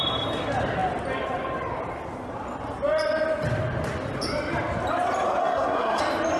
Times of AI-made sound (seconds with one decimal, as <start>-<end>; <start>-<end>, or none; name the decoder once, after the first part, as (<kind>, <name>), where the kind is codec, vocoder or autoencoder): 5.4-6.0 (codec, SNAC)